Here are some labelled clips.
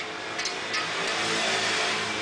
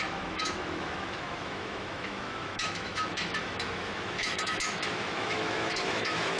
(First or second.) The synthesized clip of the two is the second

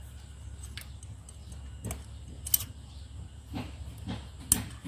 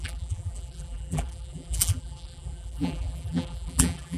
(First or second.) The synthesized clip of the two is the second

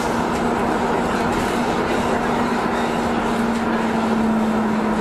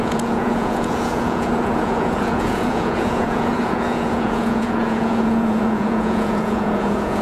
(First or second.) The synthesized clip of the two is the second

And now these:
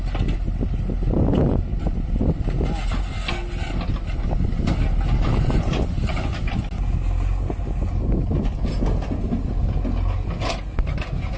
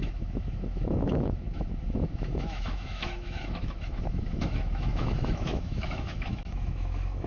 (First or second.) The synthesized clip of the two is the second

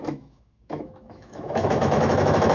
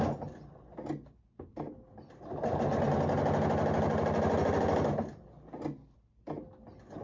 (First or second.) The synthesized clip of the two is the first